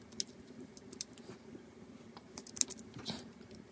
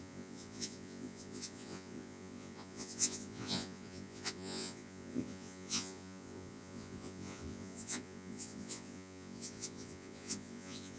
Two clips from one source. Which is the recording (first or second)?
first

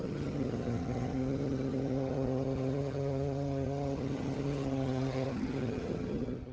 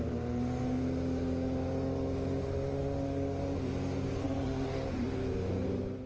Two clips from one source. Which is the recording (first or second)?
second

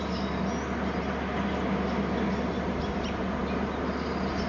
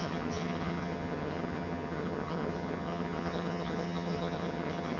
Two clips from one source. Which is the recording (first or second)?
first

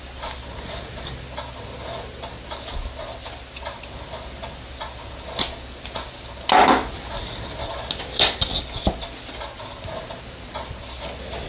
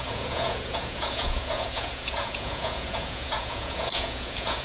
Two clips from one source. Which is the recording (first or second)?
first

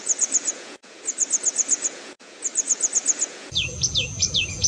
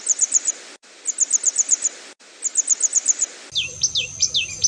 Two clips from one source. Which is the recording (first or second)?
second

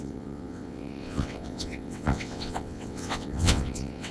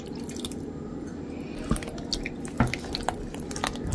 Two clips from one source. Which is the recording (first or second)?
second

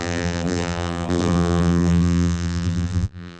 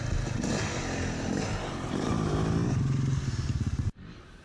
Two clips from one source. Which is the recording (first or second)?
second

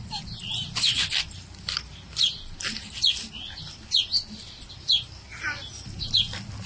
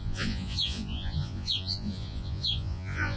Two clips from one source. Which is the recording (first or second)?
first